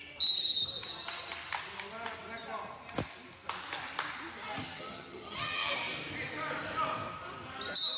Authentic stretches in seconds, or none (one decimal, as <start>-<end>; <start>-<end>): 0.0-4.6; 5.7-8.0